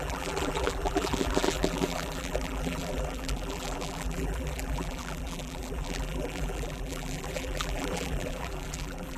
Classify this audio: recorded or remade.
remade